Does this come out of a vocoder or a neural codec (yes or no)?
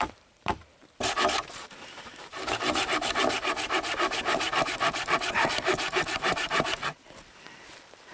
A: yes